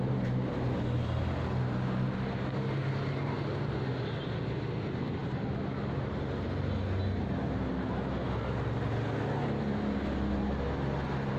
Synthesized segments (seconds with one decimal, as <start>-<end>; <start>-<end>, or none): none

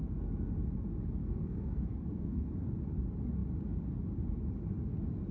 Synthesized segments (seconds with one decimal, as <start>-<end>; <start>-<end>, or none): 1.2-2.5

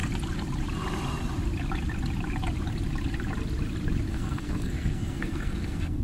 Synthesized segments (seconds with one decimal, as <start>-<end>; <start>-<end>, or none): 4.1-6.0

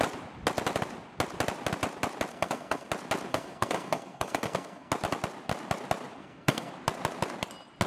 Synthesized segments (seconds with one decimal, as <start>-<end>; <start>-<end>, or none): 2.3-2.9; 3.3-4.9; 6.2-6.7

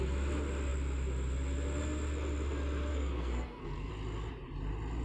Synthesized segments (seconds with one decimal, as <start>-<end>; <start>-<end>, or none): 2.9-3.9

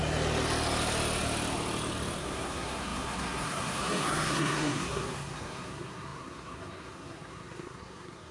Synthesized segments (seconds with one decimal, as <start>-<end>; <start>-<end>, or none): 2.2-8.3

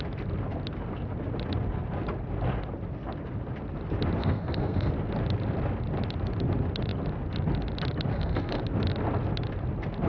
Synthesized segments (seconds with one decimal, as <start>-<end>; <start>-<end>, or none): 4.2-4.9; 8.1-8.6

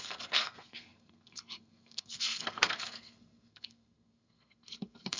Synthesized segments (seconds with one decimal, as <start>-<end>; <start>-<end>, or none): 0.0-5.2